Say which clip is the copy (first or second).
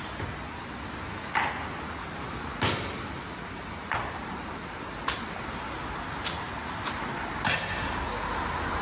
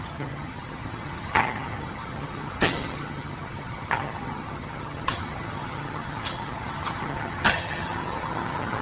second